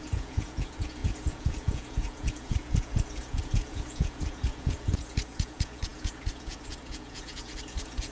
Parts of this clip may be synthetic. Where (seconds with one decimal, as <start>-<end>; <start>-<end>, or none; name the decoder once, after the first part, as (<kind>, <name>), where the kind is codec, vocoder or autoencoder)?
0.0-8.1 (vocoder, Vocos)